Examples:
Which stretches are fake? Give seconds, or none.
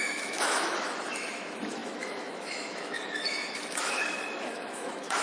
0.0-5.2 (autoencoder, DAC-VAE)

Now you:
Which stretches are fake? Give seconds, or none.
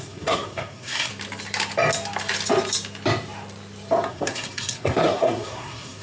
0.0-1.1 (codec, SNAC); 4.1-6.0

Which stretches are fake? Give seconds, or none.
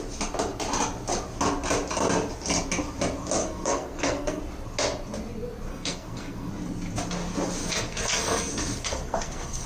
3.4-4.4 (codec, SNAC); 5.7-6.5; 7.6-9.7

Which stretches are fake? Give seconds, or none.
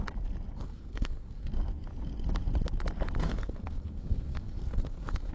0.6-1.5 (codec, SNAC); 3.2-5.3